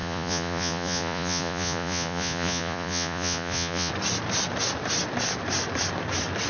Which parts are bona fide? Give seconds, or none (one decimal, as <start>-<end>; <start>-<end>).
3.9-6.5